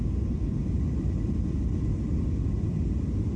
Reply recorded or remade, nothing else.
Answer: recorded